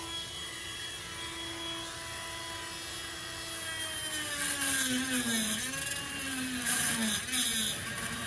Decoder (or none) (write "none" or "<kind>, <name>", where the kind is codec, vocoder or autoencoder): none